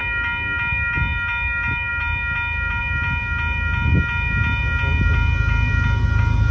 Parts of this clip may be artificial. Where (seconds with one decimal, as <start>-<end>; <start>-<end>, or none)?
none